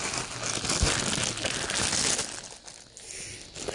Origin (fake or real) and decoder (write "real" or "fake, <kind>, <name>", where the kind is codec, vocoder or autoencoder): real